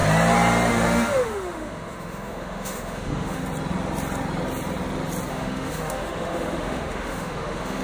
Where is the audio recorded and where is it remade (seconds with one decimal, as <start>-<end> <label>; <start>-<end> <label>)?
0.0-0.7 recorded; 0.7-3.4 remade; 3.4-5.3 recorded; 5.3-7.8 remade